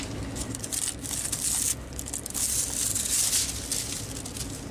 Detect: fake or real real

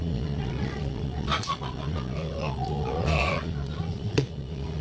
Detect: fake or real fake